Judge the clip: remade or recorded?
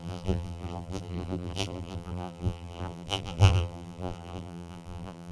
remade